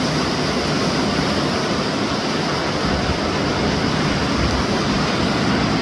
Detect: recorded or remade recorded